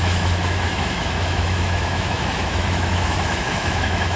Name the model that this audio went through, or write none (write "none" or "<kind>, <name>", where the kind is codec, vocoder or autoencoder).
autoencoder, DAC-VAE